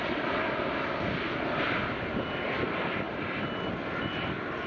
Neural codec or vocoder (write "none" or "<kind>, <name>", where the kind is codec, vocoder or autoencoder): none